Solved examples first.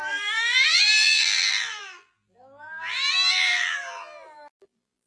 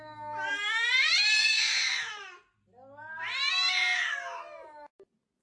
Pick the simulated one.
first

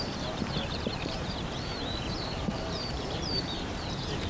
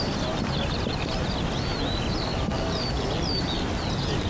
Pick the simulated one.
first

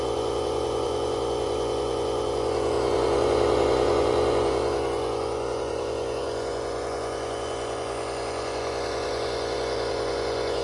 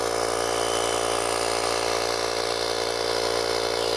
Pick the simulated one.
first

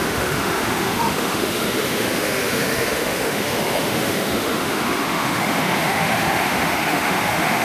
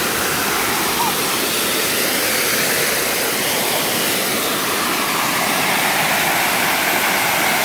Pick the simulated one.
first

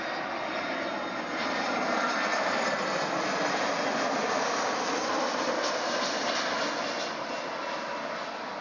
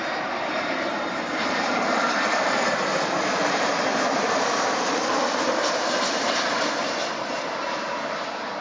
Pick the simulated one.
second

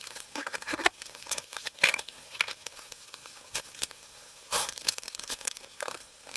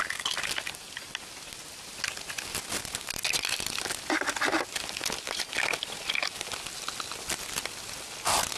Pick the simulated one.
first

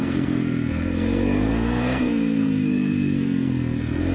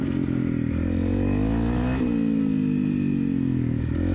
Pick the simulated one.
first